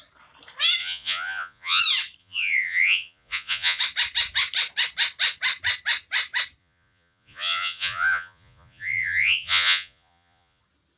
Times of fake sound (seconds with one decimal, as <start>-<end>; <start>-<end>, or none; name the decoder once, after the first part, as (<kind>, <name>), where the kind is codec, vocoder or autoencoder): 0.8-1.8 (vocoder, Vocos); 2.2-3.8; 6.6-10.6